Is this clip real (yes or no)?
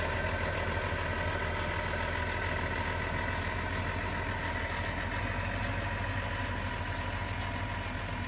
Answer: yes